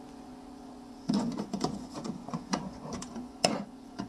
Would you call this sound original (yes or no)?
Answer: no